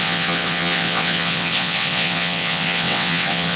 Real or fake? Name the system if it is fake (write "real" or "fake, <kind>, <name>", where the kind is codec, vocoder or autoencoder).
fake, vocoder, WaveNeXt